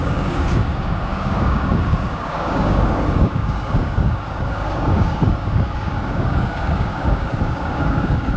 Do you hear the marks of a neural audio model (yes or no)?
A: yes